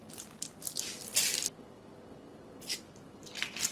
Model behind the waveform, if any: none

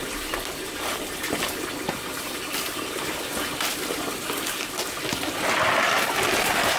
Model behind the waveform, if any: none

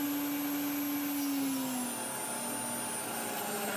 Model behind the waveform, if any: none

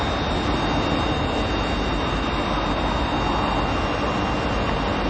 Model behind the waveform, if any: none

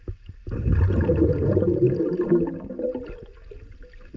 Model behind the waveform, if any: none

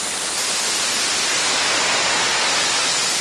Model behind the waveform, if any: none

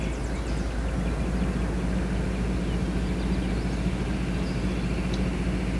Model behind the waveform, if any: none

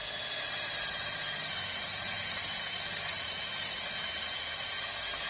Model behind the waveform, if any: none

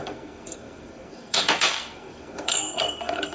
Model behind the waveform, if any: codec, SNAC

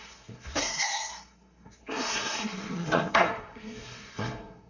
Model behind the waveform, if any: codec, SNAC